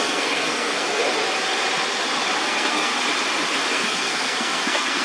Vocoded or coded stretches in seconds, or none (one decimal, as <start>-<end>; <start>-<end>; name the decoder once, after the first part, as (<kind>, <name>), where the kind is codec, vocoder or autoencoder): 0.0-1.0 (codec, SNAC); 2.4-2.9; 3.7-5.0